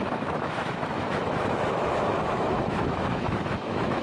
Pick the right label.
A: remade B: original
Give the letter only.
A